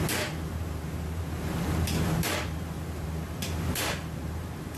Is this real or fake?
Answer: fake